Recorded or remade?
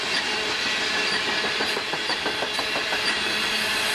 recorded